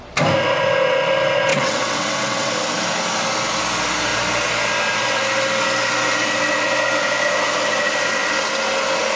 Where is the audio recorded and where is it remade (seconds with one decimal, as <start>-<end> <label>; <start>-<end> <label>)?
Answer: 0.0-1.5 recorded; 1.5-2.5 remade; 2.5-9.2 recorded